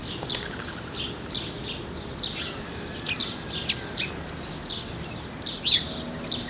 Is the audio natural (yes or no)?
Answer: yes